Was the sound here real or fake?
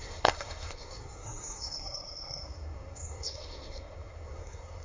fake